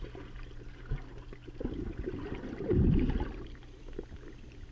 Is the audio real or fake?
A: real